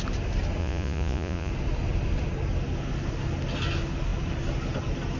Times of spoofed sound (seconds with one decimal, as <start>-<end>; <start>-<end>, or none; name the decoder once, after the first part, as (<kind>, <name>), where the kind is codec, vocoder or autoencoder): 0.6-1.5 (vocoder, Vocos)